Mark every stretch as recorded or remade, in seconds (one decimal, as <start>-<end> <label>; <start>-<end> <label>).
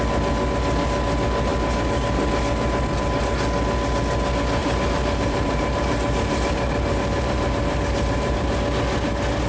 0.0-4.6 recorded; 4.6-8.5 remade; 8.5-9.5 recorded